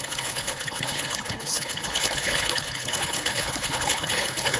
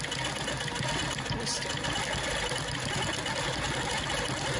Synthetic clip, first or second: first